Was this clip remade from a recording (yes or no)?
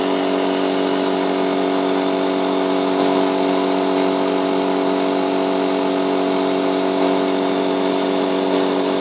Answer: no